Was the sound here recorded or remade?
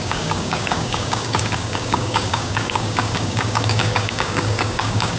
remade